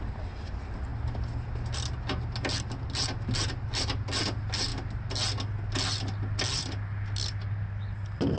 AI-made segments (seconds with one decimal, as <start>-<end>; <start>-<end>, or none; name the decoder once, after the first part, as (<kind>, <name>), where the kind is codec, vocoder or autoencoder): none